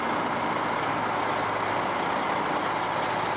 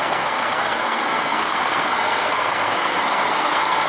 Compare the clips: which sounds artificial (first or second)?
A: second